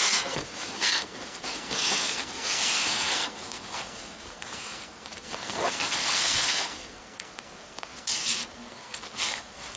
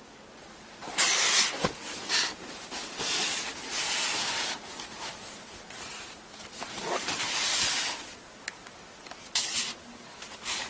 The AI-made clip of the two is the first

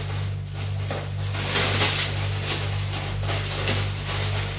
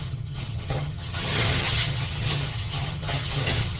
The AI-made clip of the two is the second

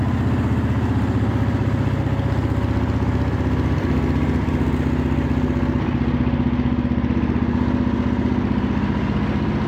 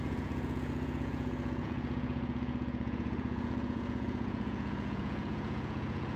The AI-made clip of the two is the second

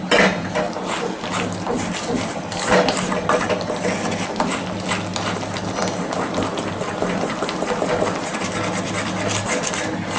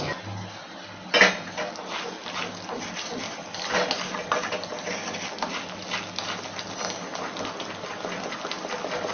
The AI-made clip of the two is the first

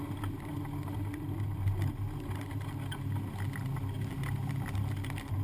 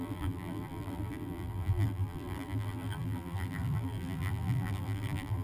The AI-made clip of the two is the second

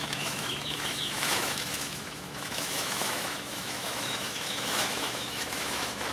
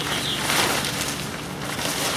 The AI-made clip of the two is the first